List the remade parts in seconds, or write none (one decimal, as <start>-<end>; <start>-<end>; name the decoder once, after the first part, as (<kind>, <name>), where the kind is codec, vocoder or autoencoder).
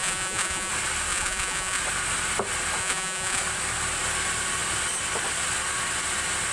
0.0-0.7 (vocoder, Vocos); 1.1-1.8; 2.8-3.4